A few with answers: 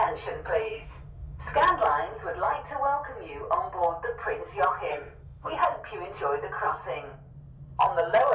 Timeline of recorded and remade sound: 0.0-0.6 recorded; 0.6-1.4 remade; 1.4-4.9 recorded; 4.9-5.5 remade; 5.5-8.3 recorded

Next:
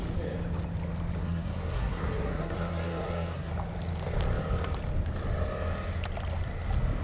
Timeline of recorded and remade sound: 0.0-1.2 recorded; 1.2-3.5 remade; 3.5-7.0 recorded

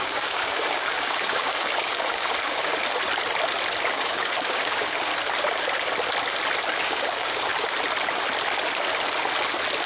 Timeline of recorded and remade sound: 0.0-2.7 remade; 2.7-3.9 recorded; 3.9-5.1 remade; 5.1-6.7 recorded; 6.7-7.5 remade; 7.5-9.9 recorded

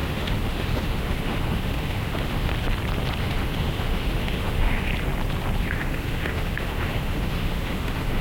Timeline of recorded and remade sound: 0.0-2.5 remade; 2.5-3.2 recorded; 3.2-4.9 remade; 4.9-5.6 recorded; 5.6-8.2 remade

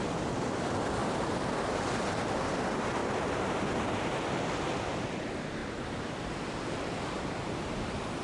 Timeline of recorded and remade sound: 0.0-1.0 recorded; 1.0-1.8 remade; 1.8-3.0 recorded; 3.0-3.9 remade; 3.9-8.2 recorded

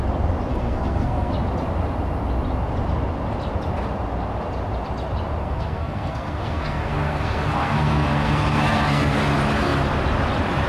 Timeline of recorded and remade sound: 0.0-0.5 recorded; 0.5-1.3 remade; 1.3-5.4 recorded; 5.4-9.2 remade; 9.2-10.7 recorded